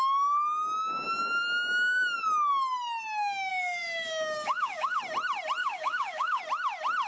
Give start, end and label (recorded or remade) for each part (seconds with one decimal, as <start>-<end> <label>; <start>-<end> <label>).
0.0-3.5 recorded; 3.5-5.0 remade; 5.0-5.6 recorded; 5.6-6.4 remade; 6.4-7.1 recorded